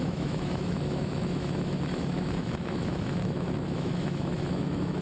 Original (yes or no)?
no